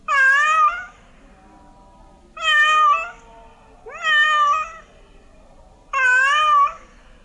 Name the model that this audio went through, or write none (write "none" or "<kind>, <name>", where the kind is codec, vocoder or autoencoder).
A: none